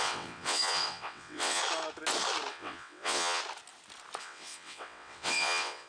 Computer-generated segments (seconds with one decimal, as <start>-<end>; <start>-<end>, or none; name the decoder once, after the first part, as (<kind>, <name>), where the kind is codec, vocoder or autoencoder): 0.0-1.6 (vocoder, WaveNeXt); 2.5-3.4; 4.2-5.9